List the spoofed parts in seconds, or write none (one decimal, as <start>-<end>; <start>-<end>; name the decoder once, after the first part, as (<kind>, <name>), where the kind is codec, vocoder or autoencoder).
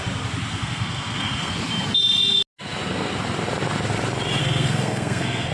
0.5-1.5 (codec, SNAC); 4.4-5.5